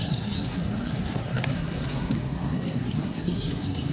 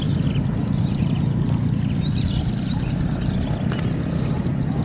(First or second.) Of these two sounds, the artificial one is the first